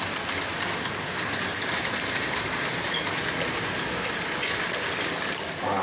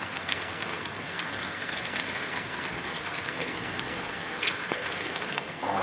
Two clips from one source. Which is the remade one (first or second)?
second